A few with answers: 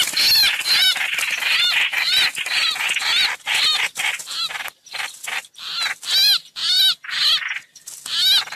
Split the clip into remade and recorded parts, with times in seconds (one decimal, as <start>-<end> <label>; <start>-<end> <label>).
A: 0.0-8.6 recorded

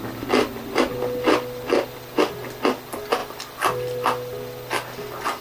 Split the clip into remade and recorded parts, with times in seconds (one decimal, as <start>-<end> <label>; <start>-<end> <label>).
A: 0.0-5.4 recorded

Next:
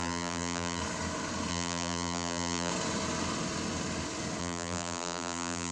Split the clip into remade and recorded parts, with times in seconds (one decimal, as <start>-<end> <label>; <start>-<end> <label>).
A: 0.0-0.8 remade; 0.8-1.5 recorded; 1.5-2.7 remade; 2.7-4.4 recorded; 4.4-5.7 remade

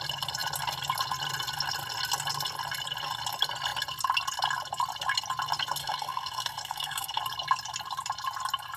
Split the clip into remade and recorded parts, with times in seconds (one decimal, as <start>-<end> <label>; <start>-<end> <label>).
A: 0.0-5.8 recorded; 5.8-7.2 remade; 7.2-8.8 recorded